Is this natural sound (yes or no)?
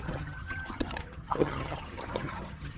no